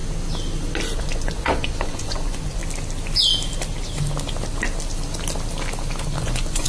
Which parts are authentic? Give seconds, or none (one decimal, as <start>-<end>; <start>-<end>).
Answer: 0.0-1.0; 2.6-6.2